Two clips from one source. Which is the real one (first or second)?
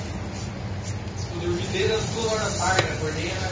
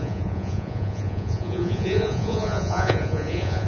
first